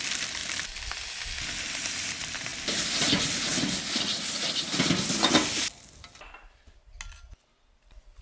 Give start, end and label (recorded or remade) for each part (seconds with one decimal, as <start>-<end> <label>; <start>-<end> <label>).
0.0-8.2 recorded